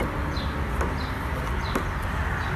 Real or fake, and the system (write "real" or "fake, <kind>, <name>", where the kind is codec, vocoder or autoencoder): real